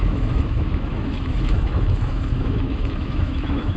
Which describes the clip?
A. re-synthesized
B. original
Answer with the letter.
A